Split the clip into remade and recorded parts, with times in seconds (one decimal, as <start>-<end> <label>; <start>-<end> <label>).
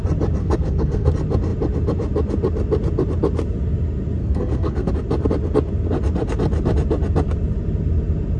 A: 0.0-0.4 recorded; 0.4-1.1 remade; 1.1-4.2 recorded; 4.2-4.9 remade; 4.9-8.4 recorded